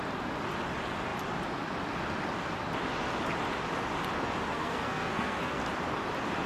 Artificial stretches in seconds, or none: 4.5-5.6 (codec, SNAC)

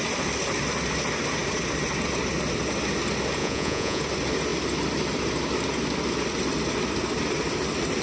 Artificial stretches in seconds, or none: 3.4-4.0 (vocoder, Vocos)

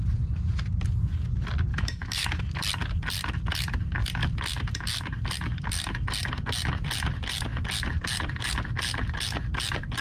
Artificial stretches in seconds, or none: 1.7-2.4 (autoencoder, DAC-VAE)